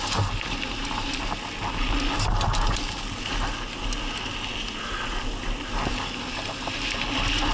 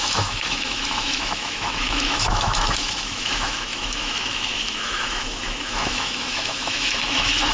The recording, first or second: first